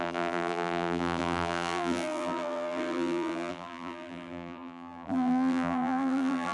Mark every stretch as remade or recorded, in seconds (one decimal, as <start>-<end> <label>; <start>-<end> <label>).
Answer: 0.0-6.5 remade